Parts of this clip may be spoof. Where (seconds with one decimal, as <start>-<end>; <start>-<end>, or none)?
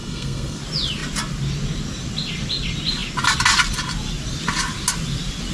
0.0-0.6